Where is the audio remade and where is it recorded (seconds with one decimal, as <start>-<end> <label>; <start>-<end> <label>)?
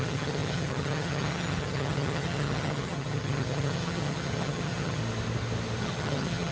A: 0.0-5.0 remade; 5.0-5.8 recorded; 5.8-6.5 remade